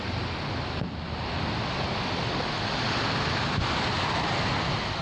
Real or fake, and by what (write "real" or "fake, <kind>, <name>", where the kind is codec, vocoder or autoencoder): real